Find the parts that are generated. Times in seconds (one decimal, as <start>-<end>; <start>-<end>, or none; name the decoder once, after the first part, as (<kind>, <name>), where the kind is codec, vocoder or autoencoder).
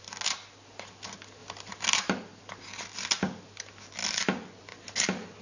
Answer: none